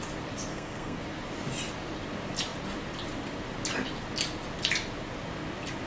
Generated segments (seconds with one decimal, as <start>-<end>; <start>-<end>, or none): 0.5-1.0